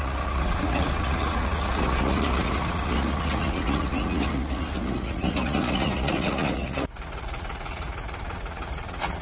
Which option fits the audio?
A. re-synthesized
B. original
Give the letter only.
A